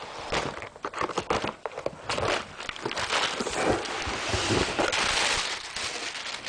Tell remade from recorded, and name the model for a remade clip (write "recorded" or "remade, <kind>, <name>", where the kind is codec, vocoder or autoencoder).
recorded